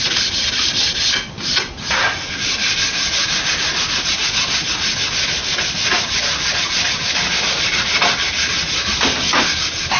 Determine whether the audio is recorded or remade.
recorded